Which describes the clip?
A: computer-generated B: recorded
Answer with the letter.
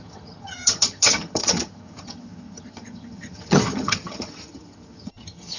A